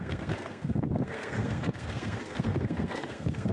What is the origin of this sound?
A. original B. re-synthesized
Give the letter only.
B